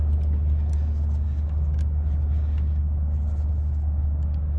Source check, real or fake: real